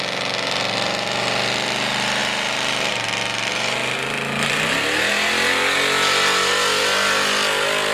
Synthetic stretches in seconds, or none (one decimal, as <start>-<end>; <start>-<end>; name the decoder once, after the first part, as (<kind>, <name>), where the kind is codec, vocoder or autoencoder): none